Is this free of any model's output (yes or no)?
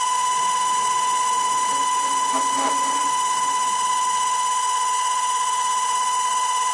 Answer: yes